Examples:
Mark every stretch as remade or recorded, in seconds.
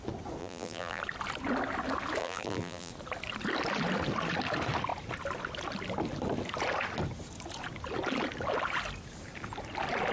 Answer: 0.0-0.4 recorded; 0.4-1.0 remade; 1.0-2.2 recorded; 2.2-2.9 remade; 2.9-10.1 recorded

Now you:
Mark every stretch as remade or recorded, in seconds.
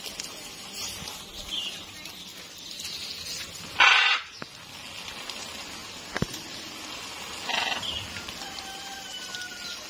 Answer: 0.0-9.9 recorded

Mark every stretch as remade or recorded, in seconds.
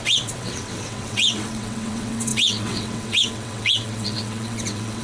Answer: 0.0-5.0 remade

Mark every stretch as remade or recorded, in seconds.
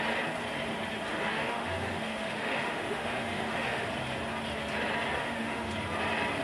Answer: 0.0-1.1 recorded; 1.1-3.9 remade; 3.9-5.2 recorded; 5.2-5.7 remade; 5.7-6.4 recorded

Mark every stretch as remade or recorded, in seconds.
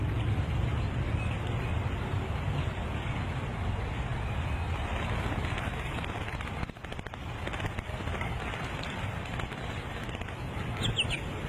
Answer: 0.0-11.5 recorded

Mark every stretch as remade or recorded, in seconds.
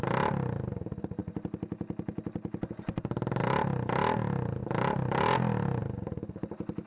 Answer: 0.0-6.9 recorded